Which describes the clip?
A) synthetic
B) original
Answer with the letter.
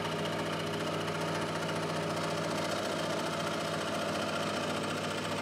B